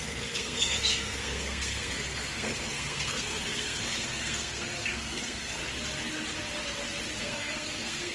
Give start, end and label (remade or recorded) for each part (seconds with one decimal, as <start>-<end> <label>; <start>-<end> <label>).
0.0-5.6 remade; 5.6-7.2 recorded; 7.2-8.1 remade

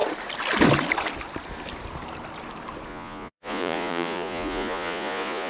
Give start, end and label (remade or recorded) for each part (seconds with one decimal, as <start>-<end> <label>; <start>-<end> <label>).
0.0-2.9 recorded; 2.9-5.5 remade

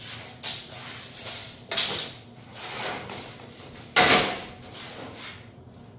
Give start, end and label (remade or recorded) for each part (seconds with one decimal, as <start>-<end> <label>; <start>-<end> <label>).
0.0-6.0 recorded

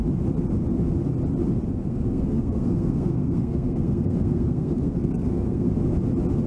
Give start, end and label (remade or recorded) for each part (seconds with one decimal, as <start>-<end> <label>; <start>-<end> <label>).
0.0-1.8 recorded; 1.8-5.7 remade; 5.7-6.5 recorded

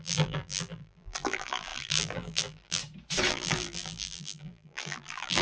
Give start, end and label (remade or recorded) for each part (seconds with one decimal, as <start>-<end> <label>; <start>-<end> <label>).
0.0-2.8 remade; 2.8-3.3 recorded; 3.3-5.4 remade

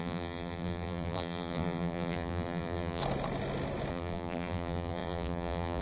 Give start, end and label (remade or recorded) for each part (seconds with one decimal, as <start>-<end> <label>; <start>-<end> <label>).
0.0-3.0 remade; 3.0-3.9 recorded; 3.9-5.8 remade

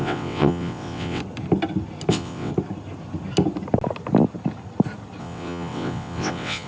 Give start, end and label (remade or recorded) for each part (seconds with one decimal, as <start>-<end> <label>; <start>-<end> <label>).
0.0-1.2 remade; 1.2-2.1 recorded; 2.1-2.5 remade; 2.5-5.2 recorded; 5.2-6.7 remade

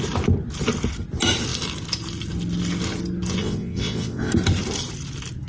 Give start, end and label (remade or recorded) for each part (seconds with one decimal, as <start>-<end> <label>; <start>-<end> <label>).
0.0-3.4 recorded; 3.4-4.3 remade; 4.3-5.5 recorded